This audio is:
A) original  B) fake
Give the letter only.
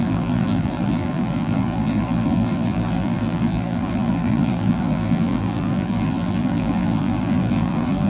B